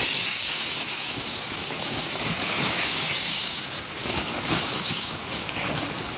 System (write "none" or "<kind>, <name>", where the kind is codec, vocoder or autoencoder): codec, DAC